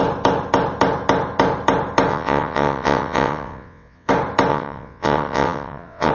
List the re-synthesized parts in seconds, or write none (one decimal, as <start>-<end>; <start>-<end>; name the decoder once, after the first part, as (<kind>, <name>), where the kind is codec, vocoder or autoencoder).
2.1-4.1 (vocoder, WaveNeXt); 4.5-6.1